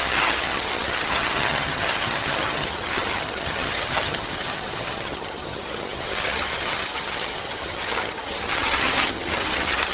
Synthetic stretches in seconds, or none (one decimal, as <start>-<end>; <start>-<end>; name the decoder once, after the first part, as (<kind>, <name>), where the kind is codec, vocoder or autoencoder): 0.0-9.9 (vocoder, HiFi-GAN)